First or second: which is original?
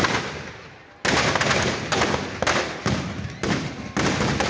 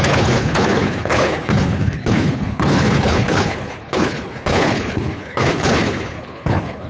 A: first